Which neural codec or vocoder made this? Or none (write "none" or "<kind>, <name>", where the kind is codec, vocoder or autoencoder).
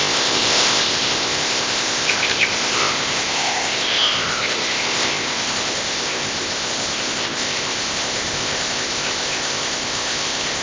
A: codec, ZipCodec